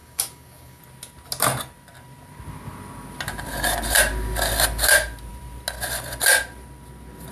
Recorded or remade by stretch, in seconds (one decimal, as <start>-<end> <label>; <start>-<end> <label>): 0.0-0.8 remade; 0.8-7.3 recorded